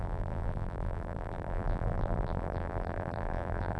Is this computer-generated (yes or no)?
yes